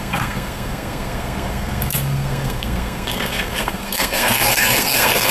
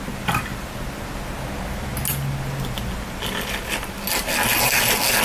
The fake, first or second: first